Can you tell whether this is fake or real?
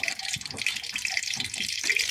fake